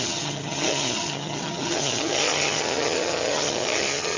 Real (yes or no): no